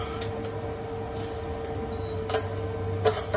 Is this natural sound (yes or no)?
yes